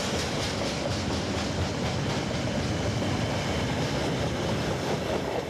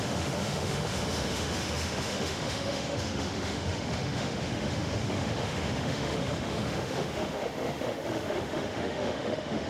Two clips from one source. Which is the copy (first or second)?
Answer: second